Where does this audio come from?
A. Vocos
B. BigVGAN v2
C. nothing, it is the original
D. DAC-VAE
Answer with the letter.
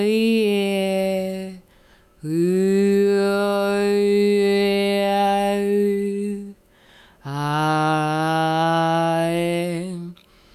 D